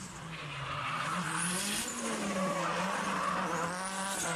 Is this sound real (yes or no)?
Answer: yes